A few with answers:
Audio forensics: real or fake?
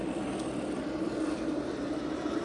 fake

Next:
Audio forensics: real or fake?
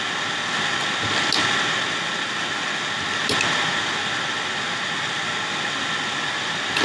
real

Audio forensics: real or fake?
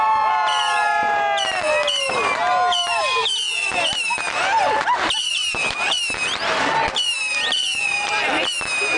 real